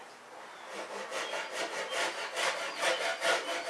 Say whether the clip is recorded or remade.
recorded